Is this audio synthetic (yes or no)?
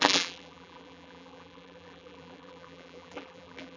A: yes